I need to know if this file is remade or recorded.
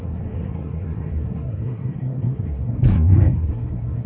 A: remade